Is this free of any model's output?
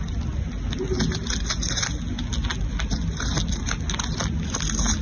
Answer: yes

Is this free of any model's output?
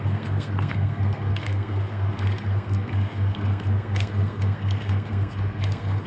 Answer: no